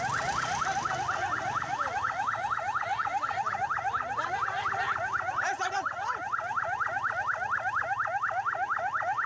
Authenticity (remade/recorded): recorded